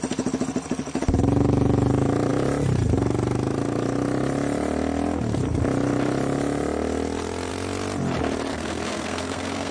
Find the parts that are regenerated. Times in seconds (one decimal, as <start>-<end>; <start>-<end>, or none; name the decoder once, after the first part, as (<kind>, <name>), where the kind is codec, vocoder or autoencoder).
8.5-9.7 (codec, SNAC)